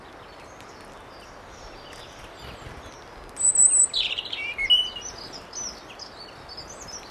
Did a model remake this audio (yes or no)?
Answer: no